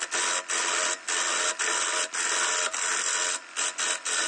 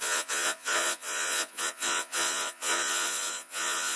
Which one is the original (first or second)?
first